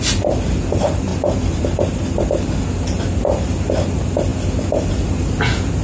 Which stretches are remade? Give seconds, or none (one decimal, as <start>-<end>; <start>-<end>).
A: none